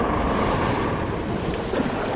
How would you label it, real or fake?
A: real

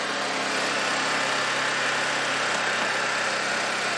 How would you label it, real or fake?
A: real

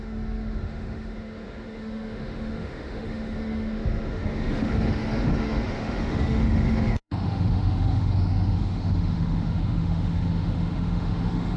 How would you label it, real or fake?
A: fake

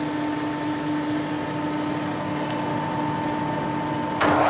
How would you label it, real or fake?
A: real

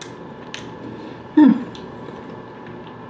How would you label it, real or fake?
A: real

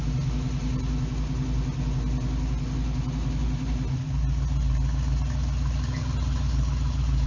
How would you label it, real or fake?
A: real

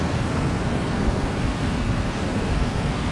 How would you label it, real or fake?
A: fake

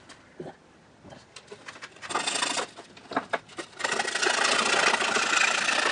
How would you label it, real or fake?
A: real